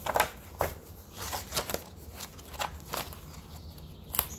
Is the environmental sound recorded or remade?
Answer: recorded